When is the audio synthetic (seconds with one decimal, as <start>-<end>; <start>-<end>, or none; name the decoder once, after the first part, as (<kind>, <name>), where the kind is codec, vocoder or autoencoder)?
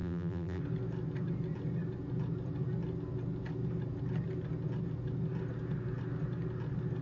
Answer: 0.0-0.6 (vocoder, BigVGAN v2)